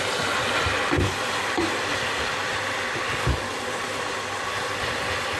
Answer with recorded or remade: recorded